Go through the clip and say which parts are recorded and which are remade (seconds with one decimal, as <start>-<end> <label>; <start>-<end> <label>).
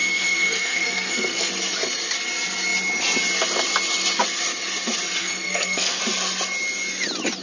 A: 0.0-1.5 remade; 1.5-5.2 recorded; 5.2-6.0 remade; 6.0-7.4 recorded